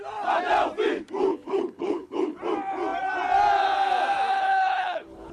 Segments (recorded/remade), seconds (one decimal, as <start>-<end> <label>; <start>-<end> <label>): 0.0-1.3 recorded; 1.3-2.4 remade; 2.4-4.3 recorded; 4.3-5.3 remade